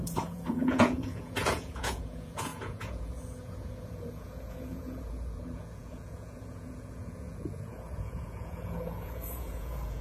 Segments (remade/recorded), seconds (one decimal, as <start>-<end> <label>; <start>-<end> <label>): 0.0-10.0 remade